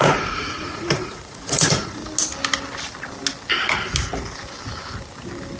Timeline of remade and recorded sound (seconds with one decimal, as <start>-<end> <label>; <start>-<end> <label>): 0.0-2.0 remade; 2.0-5.6 recorded